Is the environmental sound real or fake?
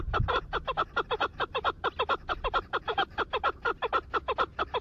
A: fake